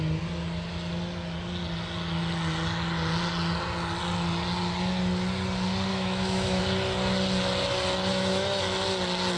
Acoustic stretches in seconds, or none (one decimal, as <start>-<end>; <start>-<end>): 0.0-5.9; 6.6-8.1; 8.6-9.4